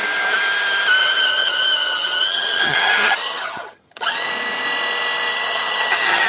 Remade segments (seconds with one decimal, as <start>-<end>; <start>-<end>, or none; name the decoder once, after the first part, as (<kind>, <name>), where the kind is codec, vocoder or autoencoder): 1.0-4.3 (vocoder, HiFi-GAN); 5.3-6.3